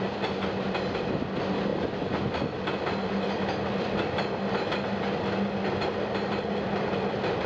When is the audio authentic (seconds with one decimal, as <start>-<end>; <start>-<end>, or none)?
0.0-7.5